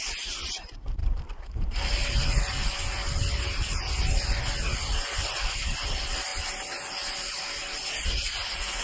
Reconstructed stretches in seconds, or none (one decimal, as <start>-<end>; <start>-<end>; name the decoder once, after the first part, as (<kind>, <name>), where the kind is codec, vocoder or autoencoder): 1.0-2.4 (vocoder, BigVGAN v2)